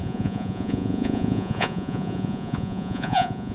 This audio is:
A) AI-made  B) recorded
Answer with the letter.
A